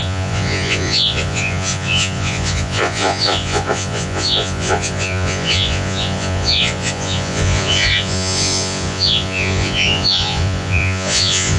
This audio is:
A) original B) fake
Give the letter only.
B